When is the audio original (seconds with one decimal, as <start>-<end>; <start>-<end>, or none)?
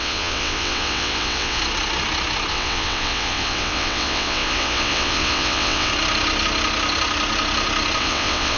1.6-2.5; 5.9-8.0